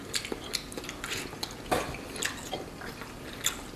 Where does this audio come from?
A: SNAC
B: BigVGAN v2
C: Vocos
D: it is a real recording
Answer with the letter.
D